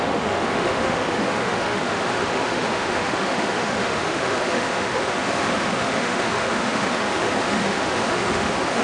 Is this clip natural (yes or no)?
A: no